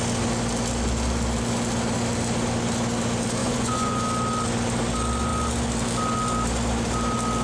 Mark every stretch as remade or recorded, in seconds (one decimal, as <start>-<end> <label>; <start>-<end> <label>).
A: 0.0-3.4 recorded; 3.4-4.0 remade; 4.0-7.4 recorded